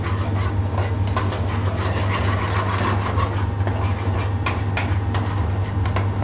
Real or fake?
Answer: real